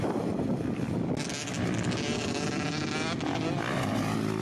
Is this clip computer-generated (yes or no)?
no